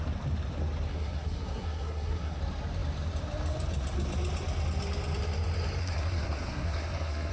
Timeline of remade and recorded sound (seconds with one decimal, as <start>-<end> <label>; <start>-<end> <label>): 0.0-0.9 recorded; 0.9-2.4 remade; 2.4-5.8 recorded; 5.8-7.3 remade